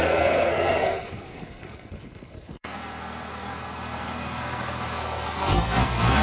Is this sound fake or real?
fake